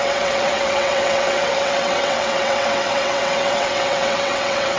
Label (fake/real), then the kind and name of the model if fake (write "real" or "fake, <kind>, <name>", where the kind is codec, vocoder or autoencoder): fake, vocoder, WaveNeXt